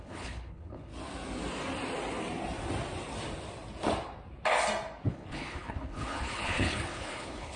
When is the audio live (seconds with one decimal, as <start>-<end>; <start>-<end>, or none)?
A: 0.9-5.1